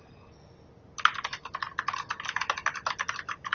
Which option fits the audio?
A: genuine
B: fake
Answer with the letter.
A